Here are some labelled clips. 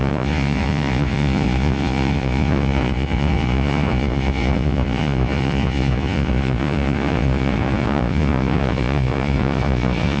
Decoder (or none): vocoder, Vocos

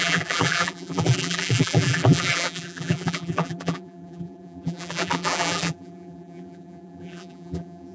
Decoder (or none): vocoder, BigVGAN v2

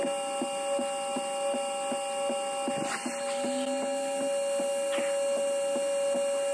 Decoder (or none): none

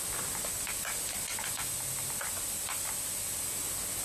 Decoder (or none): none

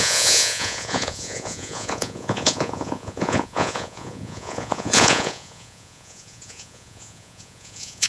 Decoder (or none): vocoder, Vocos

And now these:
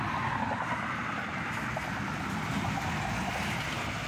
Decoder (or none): vocoder, BigVGAN v2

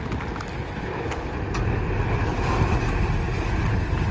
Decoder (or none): none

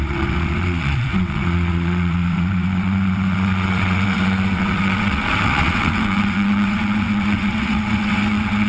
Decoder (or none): vocoder, WaveNeXt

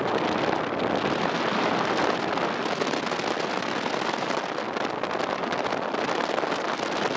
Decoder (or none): none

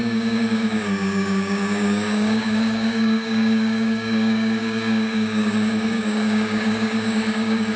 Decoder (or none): codec, DAC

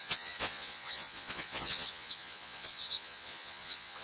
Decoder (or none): vocoder, Vocos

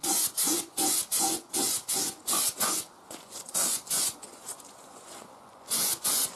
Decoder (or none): vocoder, Vocos